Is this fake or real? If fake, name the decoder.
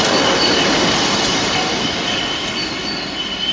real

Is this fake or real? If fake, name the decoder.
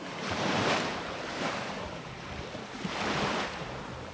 fake, vocoder, BigVGAN v2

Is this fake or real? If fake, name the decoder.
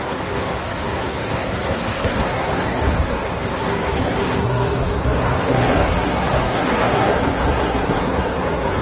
fake, codec, SNAC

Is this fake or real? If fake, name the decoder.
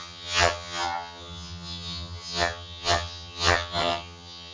fake, vocoder, HiFi-GAN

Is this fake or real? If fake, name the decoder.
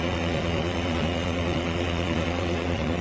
fake, vocoder, Vocos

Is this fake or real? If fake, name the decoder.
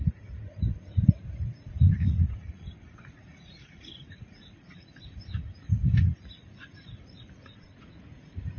fake, vocoder, Vocos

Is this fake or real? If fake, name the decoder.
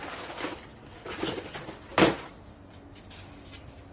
real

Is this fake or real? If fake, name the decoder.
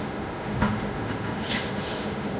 fake, autoencoder, DAC-VAE